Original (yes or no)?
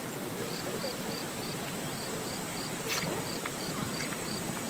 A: no